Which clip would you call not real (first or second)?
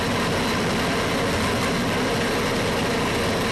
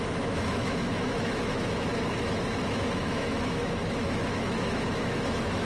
second